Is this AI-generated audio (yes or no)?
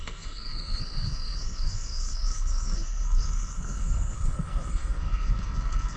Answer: yes